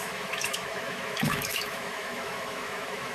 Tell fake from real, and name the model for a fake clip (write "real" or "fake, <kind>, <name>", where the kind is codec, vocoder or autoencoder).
fake, autoencoder, DAC-VAE